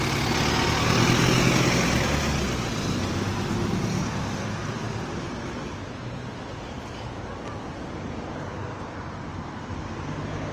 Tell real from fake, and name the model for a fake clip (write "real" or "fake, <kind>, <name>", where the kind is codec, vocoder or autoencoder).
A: real